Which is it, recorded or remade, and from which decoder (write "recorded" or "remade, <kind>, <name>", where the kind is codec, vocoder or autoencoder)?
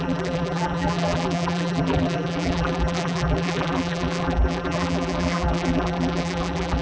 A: remade, vocoder, BigVGAN v2